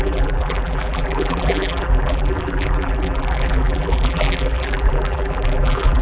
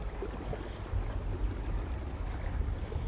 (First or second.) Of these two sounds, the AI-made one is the first